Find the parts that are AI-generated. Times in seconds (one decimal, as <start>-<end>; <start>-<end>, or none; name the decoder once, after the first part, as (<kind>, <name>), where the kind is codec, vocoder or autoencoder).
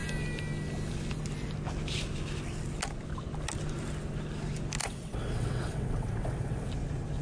4.8-6.7 (vocoder, WaveNeXt)